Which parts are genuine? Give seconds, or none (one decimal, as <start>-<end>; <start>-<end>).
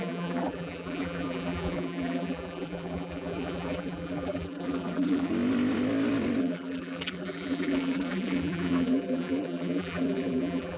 5.3-6.4